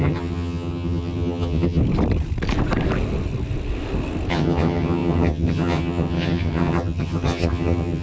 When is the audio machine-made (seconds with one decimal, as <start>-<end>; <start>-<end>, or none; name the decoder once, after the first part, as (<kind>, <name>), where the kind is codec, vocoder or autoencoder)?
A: 0.0-1.8 (vocoder, HiFi-GAN); 4.3-8.0